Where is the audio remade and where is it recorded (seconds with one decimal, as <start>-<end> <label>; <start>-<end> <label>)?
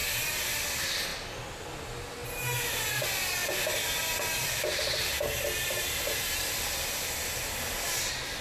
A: 0.0-3.4 recorded; 3.4-7.1 remade; 7.1-8.4 recorded